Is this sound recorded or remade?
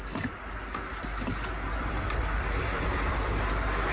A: remade